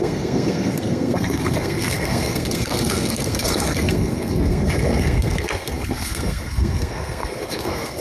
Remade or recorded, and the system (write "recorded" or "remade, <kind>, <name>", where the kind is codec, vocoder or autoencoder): remade, codec, SNAC